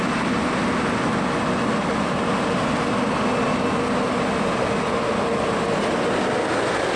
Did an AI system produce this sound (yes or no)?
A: no